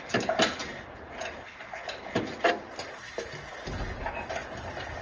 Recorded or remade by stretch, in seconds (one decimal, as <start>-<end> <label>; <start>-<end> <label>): 0.0-5.0 recorded